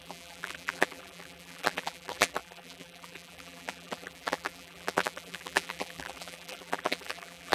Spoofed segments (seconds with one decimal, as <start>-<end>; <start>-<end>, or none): 0.0-7.5